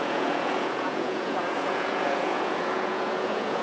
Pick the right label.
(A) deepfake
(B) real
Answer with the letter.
A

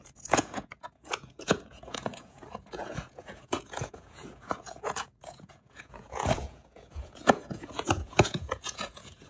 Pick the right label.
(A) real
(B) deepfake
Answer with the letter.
B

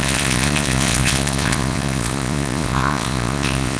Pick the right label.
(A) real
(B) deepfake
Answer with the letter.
B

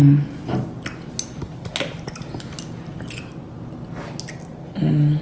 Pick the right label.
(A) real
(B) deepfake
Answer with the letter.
A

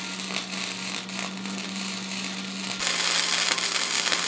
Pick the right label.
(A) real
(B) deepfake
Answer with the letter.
A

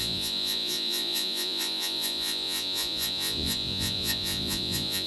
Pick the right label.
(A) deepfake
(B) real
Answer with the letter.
A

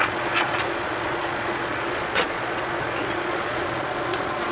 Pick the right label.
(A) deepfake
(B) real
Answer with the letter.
A